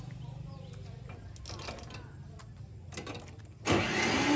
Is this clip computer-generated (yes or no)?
no